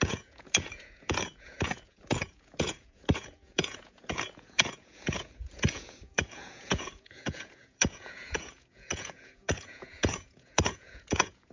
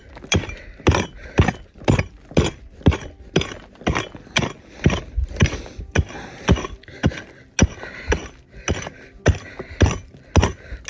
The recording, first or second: second